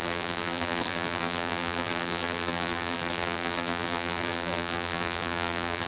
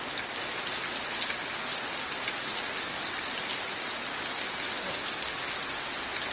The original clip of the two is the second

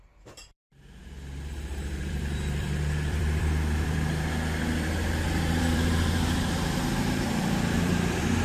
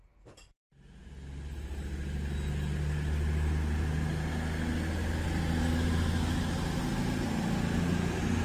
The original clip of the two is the second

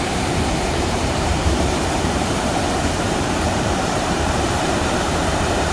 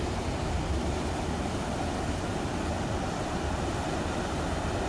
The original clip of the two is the second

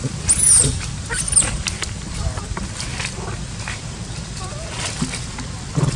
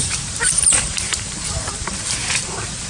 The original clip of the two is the first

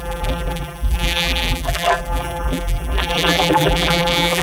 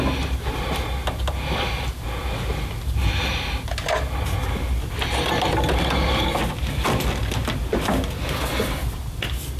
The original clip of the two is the second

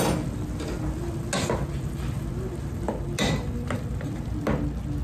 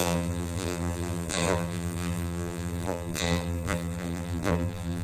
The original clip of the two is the first